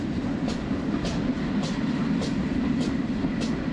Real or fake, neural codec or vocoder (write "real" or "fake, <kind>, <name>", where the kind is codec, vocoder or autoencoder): real